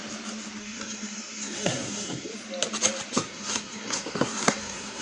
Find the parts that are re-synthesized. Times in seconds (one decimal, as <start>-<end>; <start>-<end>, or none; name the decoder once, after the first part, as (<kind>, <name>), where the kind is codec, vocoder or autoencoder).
0.6-2.3 (codec, SNAC); 3.1-5.0